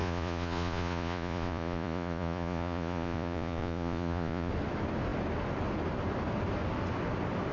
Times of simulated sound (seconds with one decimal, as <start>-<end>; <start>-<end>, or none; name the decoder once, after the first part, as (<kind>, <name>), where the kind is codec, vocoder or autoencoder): 0.0-4.5 (vocoder, Vocos)

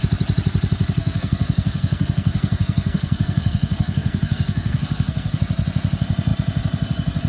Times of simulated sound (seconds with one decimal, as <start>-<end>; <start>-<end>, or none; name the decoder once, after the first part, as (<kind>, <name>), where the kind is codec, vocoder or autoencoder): 1.0-5.4 (codec, SNAC)

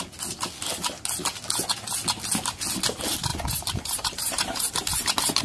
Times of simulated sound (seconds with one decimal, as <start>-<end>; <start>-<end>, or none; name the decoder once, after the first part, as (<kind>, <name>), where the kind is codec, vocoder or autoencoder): 3.3-5.4 (vocoder, BigVGAN v2)

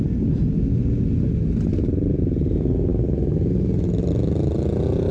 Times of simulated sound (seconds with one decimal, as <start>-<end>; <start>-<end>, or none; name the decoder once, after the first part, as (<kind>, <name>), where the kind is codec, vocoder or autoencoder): none

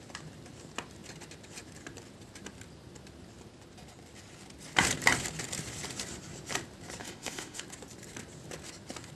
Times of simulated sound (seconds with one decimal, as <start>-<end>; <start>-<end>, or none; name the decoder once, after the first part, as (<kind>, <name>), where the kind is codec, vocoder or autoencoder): 7.0-7.6 (autoencoder, DAC-VAE)

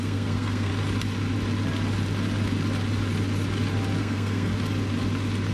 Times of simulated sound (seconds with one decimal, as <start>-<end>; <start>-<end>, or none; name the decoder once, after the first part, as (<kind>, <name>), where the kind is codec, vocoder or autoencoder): 0.0-0.7 (codec, SNAC); 4.0-4.5

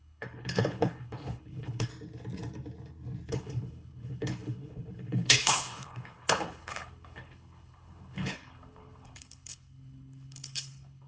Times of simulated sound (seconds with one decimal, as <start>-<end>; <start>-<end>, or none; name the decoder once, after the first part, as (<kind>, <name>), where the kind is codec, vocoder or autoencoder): 0.0-1.9 (codec, HILCodec); 3.3-11.1